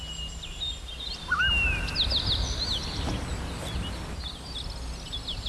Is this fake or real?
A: real